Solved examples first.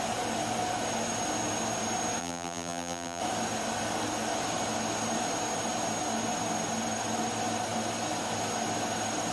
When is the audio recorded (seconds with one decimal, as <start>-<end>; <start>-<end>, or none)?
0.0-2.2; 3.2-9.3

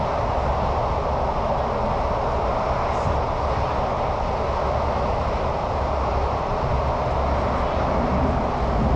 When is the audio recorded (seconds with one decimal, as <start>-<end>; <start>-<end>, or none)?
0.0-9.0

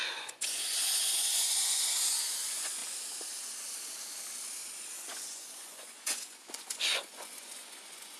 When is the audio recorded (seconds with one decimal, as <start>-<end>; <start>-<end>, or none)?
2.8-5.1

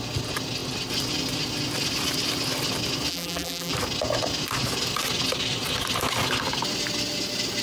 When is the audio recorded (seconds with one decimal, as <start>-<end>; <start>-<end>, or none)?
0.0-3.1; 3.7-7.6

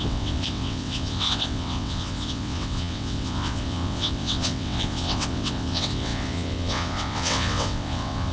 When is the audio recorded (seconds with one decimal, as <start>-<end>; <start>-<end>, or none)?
none

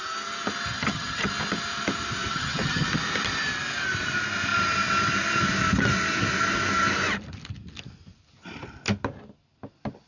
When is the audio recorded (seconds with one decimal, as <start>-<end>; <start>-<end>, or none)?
0.0-0.7; 1.3-2.3; 2.9-10.1

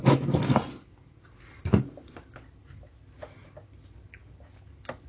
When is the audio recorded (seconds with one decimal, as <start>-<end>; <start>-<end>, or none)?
0.0-1.6; 2.2-5.1